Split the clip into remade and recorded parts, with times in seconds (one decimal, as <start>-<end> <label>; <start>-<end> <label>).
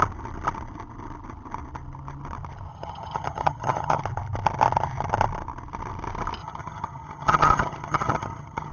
0.0-2.7 recorded; 2.7-4.0 remade; 4.0-6.4 recorded; 6.4-8.7 remade